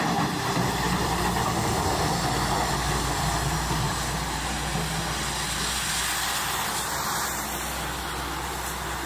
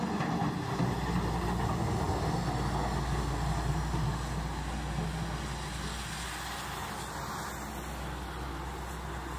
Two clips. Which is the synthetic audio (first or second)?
first